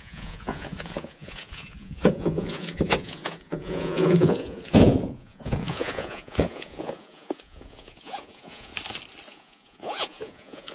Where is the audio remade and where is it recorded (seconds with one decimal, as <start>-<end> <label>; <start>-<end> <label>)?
0.0-8.7 remade; 8.7-9.3 recorded; 9.3-10.7 remade